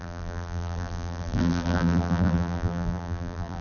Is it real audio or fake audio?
fake